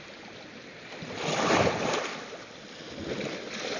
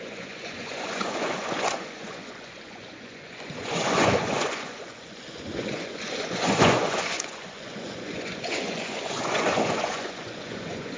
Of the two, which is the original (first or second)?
first